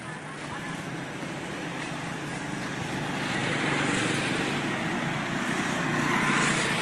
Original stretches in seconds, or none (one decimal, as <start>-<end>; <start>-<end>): 0.0-6.8